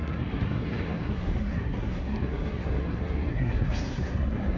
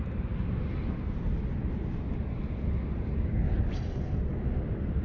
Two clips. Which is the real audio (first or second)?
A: second